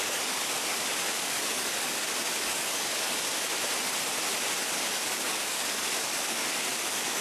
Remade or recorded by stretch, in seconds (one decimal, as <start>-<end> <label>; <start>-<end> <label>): 0.0-3.5 remade; 3.5-4.6 recorded; 4.6-7.2 remade